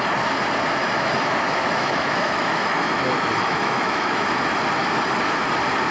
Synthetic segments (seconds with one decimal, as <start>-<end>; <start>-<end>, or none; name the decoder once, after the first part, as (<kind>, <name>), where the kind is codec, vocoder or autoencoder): 0.8-4.3 (autoencoder, DAC-VAE)